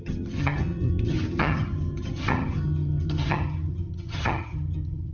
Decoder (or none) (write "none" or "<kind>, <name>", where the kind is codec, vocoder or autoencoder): vocoder, HiFi-GAN